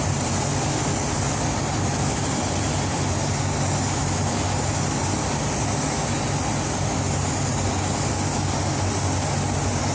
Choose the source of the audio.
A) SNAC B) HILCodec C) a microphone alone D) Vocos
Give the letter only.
C